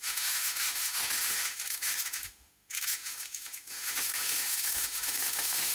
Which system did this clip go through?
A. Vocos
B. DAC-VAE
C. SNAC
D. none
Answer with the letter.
B